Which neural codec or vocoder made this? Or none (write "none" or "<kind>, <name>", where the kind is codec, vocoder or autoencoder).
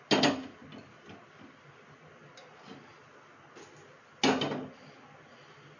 none